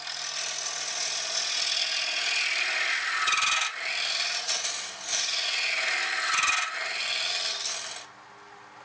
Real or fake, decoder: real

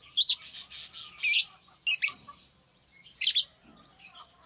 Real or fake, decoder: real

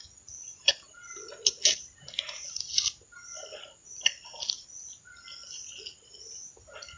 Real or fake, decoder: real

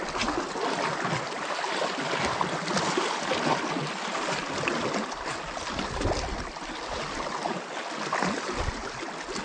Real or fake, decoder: real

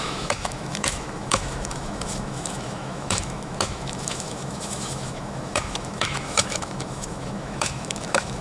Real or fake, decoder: fake, autoencoder, DAC-VAE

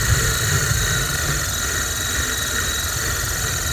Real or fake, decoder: fake, vocoder, BigVGAN v2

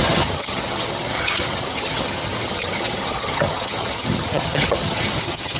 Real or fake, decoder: fake, vocoder, HiFi-GAN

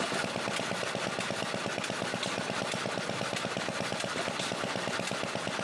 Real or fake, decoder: real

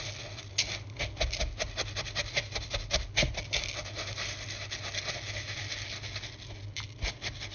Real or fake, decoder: real